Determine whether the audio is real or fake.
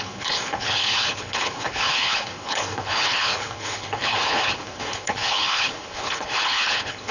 fake